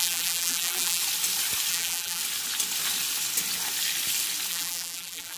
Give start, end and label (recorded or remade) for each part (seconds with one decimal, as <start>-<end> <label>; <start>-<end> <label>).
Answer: 0.0-1.0 remade; 1.0-1.7 recorded; 1.7-2.2 remade; 2.2-4.5 recorded; 4.5-5.4 remade